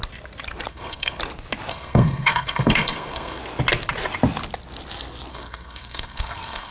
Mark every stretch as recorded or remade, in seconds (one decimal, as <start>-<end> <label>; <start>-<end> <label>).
0.0-0.7 recorded; 0.7-1.2 remade; 1.2-1.7 recorded; 1.7-3.4 remade; 3.4-5.3 recorded; 5.3-6.7 remade